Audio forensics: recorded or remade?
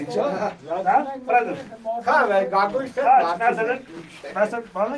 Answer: recorded